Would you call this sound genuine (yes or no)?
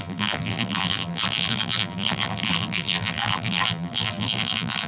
no